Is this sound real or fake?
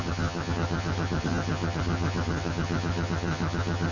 fake